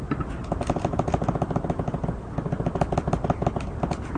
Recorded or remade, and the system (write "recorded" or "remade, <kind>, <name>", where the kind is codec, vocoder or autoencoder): recorded